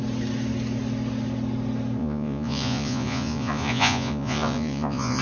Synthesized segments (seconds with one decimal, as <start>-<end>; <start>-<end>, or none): 2.0-5.2